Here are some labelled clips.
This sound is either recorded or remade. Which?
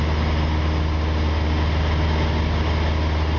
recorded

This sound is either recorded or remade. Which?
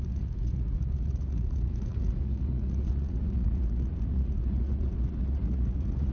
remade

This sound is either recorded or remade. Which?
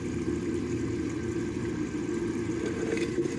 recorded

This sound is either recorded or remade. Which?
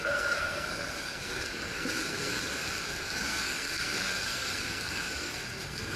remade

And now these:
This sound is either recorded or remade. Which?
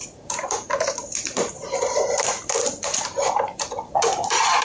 remade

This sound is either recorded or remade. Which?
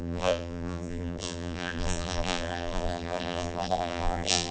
remade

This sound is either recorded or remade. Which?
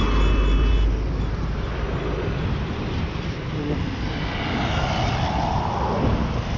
recorded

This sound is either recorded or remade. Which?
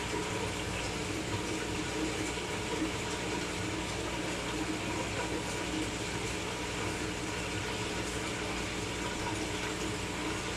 recorded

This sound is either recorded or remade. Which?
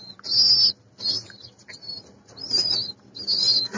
recorded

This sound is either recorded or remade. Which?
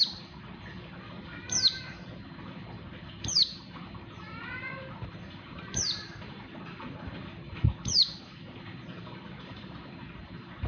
remade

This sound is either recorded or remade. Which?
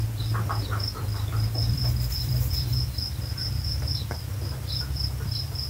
remade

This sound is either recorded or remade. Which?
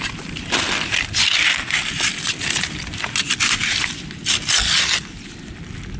recorded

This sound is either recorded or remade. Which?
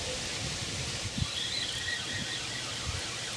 recorded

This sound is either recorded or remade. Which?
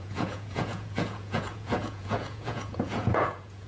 remade